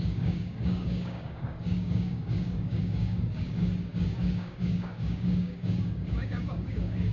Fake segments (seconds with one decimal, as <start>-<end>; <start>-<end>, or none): 0.0-7.1